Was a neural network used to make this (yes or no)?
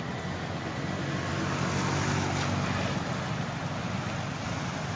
no